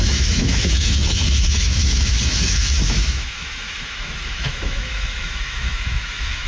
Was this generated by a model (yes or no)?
yes